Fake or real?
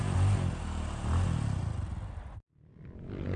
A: real